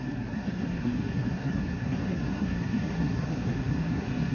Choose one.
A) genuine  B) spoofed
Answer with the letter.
B